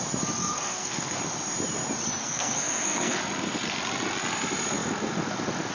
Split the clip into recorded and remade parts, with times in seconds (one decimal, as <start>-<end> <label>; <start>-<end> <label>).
0.0-0.4 recorded; 0.4-1.2 remade; 1.2-2.2 recorded; 2.2-3.2 remade; 3.2-5.7 recorded